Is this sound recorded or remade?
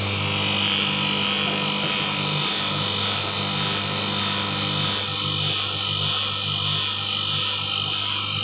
recorded